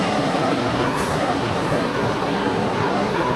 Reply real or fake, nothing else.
fake